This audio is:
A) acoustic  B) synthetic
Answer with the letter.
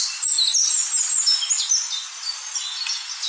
A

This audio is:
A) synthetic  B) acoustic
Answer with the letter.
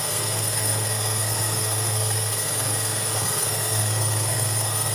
A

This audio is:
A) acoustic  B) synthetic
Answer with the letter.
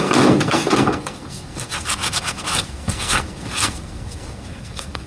B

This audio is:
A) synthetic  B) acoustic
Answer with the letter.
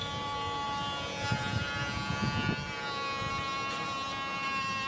B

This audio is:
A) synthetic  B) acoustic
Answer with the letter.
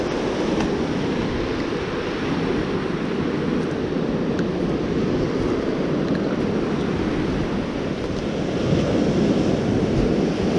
B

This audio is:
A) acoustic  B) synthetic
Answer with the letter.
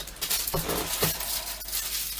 A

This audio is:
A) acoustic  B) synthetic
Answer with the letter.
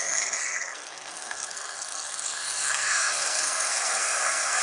B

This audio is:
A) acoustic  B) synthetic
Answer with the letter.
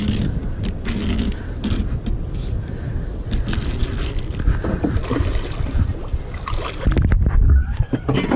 A